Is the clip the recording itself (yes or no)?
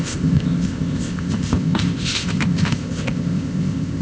no